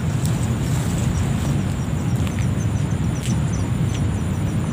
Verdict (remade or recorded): recorded